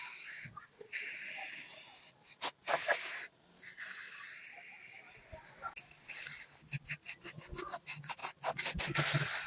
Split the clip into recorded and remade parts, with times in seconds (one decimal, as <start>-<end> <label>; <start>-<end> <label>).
0.0-9.5 recorded